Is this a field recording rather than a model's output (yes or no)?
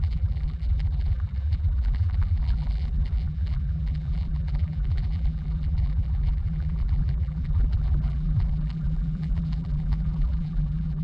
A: no